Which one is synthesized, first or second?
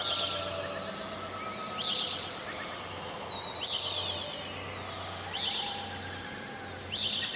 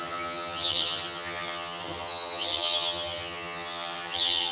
second